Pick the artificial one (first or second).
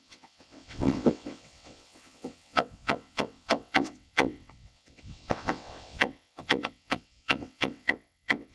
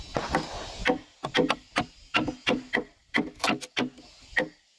first